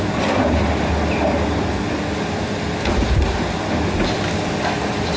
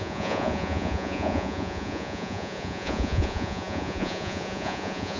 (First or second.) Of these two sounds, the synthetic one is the second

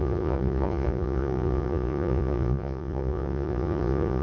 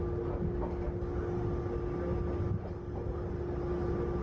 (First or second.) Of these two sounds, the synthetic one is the first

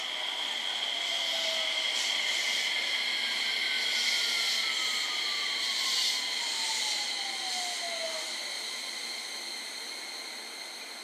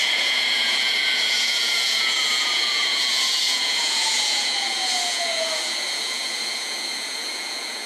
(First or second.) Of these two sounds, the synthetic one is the second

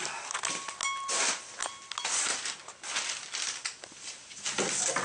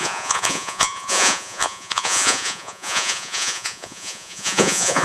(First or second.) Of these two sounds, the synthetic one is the second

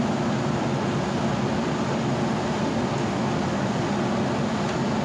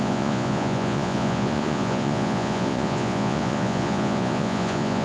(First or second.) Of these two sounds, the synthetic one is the second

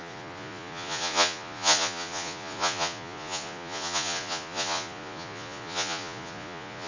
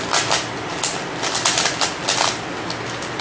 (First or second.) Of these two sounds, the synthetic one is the first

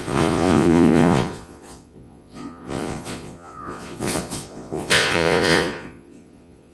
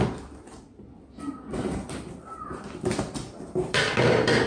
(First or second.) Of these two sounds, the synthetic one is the first